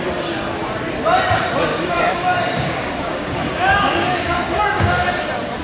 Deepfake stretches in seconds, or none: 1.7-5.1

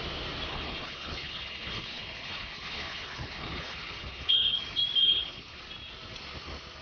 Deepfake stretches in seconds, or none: 0.5-4.6; 5.0-5.6

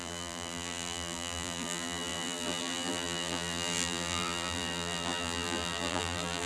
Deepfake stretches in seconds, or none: 0.0-6.5

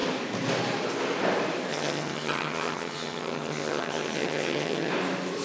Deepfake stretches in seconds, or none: 1.7-4.9

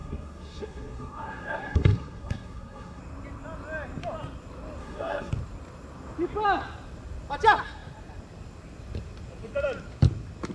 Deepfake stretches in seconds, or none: 0.0-3.0; 4.8-5.3

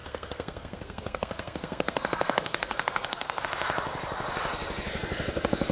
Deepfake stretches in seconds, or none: 0.0-3.4

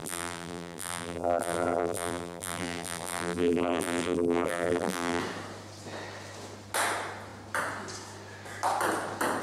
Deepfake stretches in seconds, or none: 0.0-5.2

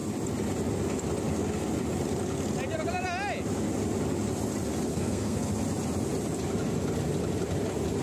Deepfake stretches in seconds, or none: 4.9-5.5